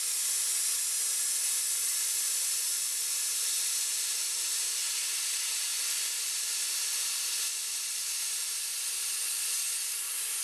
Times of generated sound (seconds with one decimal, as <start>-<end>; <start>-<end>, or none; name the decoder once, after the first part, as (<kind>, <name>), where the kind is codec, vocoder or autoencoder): none